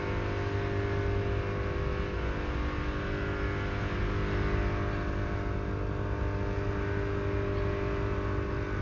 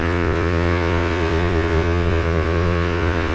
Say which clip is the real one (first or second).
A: first